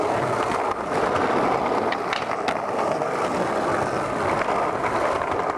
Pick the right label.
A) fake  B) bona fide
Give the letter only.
B